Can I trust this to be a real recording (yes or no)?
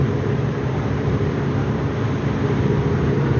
no